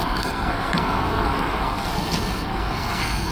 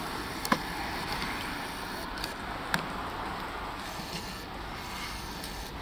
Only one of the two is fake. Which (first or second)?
first